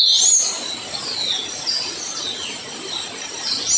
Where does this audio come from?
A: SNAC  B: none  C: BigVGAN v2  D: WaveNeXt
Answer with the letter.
B